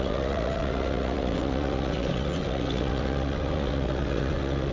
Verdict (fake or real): fake